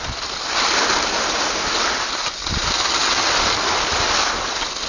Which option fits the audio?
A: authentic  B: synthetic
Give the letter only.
A